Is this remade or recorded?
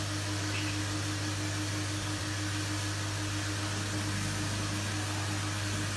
recorded